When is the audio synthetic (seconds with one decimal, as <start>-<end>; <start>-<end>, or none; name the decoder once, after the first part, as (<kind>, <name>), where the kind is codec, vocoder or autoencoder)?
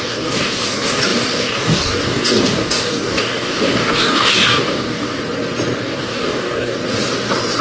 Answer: 0.0-5.2 (codec, DAC); 5.8-6.8